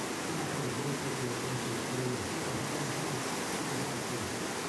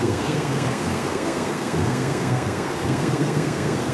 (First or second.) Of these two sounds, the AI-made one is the second